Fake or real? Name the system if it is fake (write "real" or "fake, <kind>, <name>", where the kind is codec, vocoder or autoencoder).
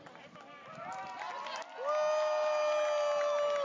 real